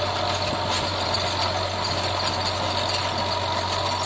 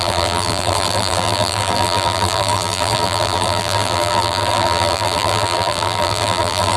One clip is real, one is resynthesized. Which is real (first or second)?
first